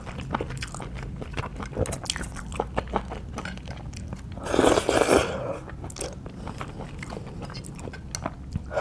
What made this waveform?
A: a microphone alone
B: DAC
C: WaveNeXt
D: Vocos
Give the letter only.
A